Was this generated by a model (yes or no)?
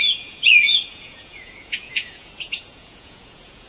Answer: yes